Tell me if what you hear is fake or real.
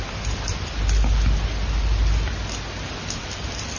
real